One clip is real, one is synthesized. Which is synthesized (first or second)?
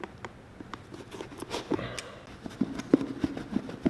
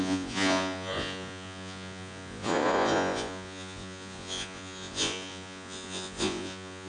second